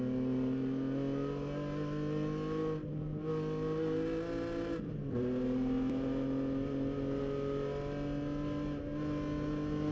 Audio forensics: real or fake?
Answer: real